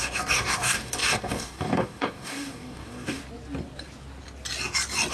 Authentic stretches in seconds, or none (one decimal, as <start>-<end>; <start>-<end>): 3.2-5.1